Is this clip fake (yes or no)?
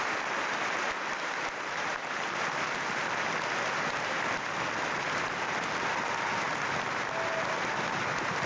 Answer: no